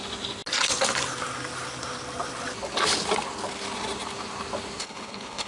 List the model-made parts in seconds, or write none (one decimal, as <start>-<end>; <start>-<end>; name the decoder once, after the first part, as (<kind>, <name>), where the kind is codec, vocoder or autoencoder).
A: 4.8-5.5 (codec, HILCodec)